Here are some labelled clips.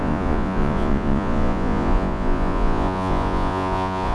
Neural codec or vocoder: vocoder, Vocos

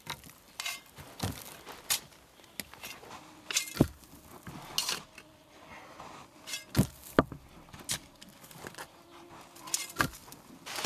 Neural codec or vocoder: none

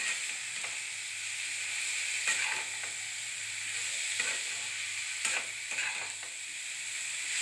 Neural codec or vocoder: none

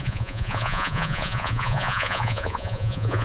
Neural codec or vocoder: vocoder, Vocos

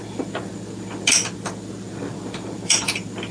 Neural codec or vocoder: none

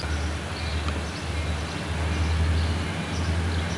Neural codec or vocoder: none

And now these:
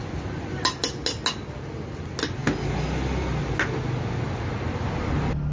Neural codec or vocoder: none